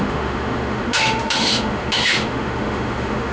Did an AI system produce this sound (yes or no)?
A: yes